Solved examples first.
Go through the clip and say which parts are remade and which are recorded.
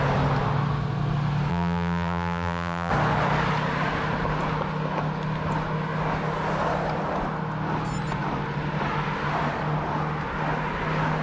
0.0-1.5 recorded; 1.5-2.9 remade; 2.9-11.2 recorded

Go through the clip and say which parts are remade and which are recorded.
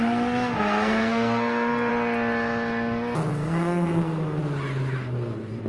0.0-1.9 remade; 1.9-3.3 recorded; 3.3-4.4 remade; 4.4-5.7 recorded